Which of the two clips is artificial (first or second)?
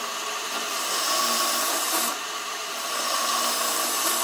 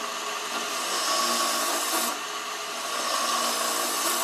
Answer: first